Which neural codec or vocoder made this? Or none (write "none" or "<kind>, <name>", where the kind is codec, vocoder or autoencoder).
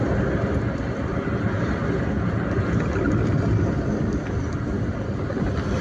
none